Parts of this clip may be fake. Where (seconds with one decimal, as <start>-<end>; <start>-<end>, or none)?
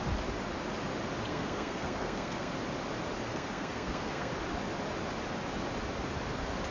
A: 1.3-2.5; 3.3-4.3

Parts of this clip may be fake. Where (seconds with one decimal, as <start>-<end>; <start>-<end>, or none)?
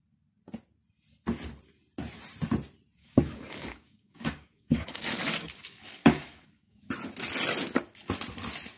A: 3.0-6.9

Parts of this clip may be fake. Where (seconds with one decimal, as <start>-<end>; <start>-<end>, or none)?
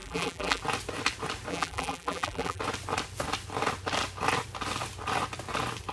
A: 0.0-0.6; 1.5-2.6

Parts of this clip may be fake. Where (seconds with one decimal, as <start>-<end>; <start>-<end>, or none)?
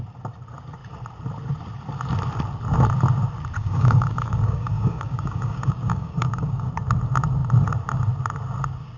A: 3.6-6.7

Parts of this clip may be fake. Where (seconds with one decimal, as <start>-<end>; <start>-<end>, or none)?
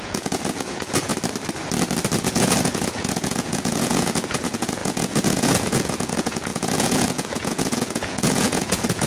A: 0.0-1.1; 2.2-9.1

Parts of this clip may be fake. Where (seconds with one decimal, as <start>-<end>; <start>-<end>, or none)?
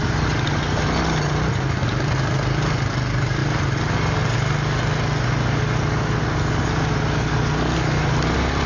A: none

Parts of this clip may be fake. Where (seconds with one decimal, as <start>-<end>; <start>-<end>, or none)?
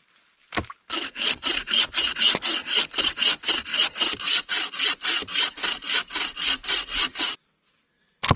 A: 0.4-2.0